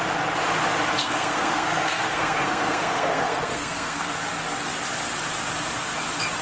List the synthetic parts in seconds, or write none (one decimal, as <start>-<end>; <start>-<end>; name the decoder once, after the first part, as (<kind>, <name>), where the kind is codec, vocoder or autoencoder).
1.0-4.1 (codec, SNAC)